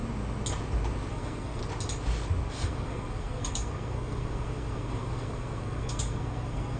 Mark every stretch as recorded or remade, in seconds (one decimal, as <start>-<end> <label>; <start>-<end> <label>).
0.0-1.1 recorded; 1.1-1.6 remade; 1.6-2.5 recorded; 2.5-6.8 remade